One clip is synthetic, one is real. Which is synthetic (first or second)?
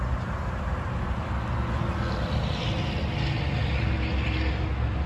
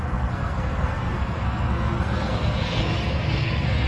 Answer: second